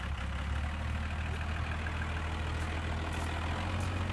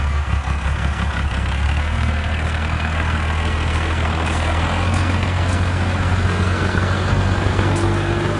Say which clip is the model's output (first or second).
second